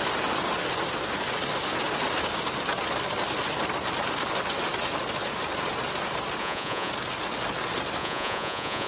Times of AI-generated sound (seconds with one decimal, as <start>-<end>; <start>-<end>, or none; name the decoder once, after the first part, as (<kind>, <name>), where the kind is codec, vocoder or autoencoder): 6.4-6.9 (vocoder, Vocos); 8.0-8.9

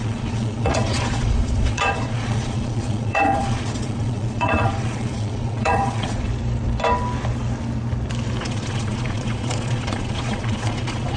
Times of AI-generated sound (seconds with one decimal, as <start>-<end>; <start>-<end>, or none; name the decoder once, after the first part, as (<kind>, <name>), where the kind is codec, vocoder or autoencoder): 0.0-6.3 (vocoder, Vocos); 8.4-11.2